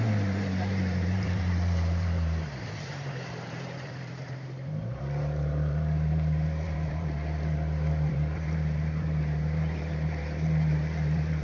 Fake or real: fake